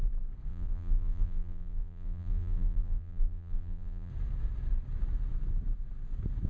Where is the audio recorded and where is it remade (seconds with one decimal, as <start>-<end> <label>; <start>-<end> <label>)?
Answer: 0.0-0.5 recorded; 0.5-4.1 remade; 4.1-6.5 recorded